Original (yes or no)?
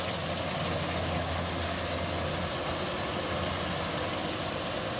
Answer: yes